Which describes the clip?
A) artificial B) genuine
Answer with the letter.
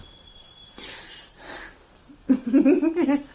B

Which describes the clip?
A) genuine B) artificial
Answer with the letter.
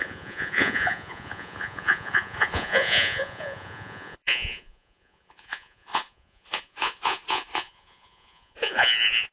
B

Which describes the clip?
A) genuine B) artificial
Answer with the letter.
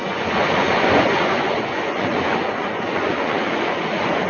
B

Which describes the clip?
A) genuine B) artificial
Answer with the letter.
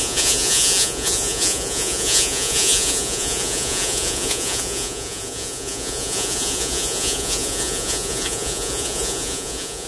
B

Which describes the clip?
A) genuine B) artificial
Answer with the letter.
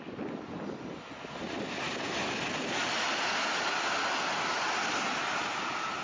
A